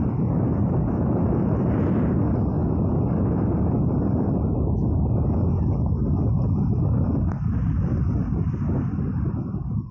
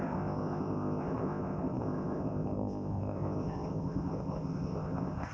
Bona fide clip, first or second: first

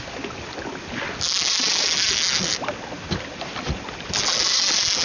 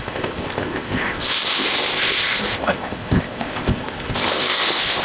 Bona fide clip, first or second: first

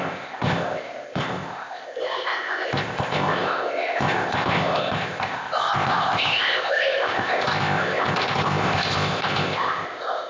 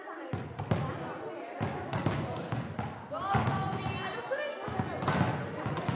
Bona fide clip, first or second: second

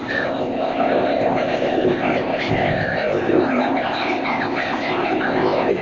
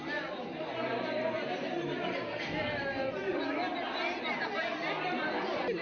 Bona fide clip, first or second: second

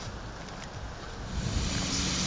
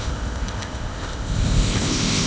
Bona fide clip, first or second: first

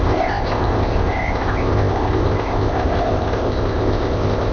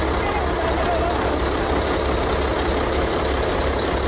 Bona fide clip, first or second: second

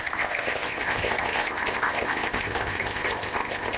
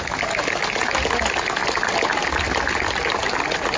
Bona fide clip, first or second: second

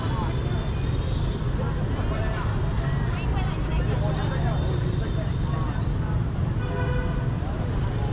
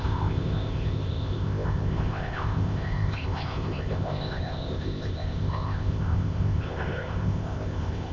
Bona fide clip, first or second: first